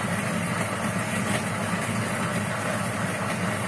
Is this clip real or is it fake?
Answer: real